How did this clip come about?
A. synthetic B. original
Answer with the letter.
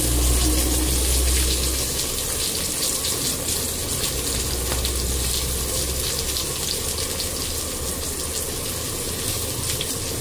B